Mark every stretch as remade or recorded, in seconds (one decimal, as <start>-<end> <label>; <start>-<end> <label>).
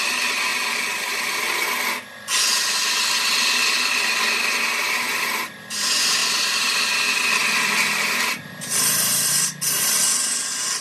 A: 0.0-0.5 recorded; 0.5-1.7 remade; 1.7-6.2 recorded; 6.2-6.8 remade; 6.8-7.4 recorded; 7.4-10.0 remade; 10.0-10.8 recorded